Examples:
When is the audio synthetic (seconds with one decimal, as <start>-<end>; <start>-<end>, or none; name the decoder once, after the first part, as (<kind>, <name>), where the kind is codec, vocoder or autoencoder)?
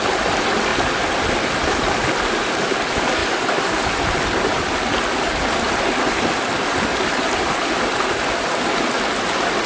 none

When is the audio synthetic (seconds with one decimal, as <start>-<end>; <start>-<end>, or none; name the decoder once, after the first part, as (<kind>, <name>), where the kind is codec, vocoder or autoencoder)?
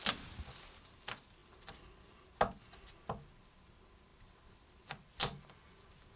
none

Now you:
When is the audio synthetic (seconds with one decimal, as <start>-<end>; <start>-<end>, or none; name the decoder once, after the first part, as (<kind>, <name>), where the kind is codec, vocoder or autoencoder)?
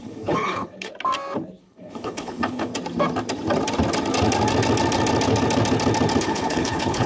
0.0-0.9 (codec, HILCodec); 1.6-2.7; 6.2-7.1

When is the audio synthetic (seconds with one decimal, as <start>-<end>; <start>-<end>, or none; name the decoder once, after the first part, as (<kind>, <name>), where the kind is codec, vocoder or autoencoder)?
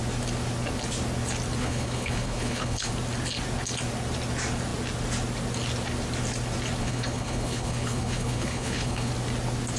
1.6-2.9 (codec, HILCodec); 6.8-9.1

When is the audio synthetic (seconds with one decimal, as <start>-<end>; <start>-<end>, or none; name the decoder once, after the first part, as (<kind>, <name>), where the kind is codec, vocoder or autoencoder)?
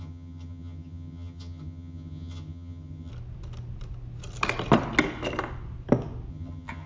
0.0-3.1 (vocoder, HiFi-GAN); 6.3-6.9